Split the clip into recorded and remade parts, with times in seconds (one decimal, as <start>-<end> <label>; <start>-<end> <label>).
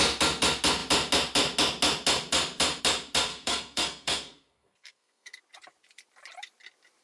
0.0-3.3 recorded; 3.3-5.4 remade; 5.4-7.0 recorded